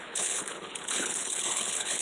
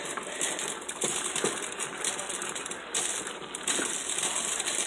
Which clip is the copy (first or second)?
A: first